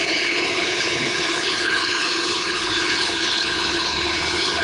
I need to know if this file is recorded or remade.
remade